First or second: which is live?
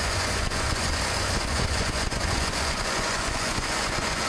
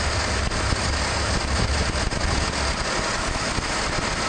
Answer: second